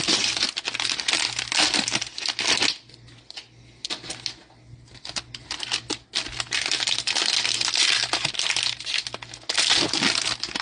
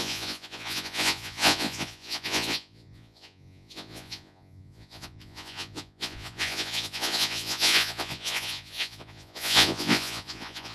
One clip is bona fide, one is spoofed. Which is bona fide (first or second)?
first